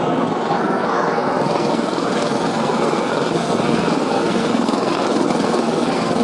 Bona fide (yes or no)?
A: no